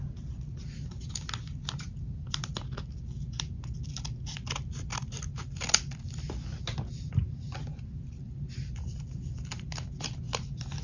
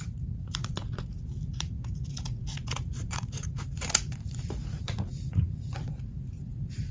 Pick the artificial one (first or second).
second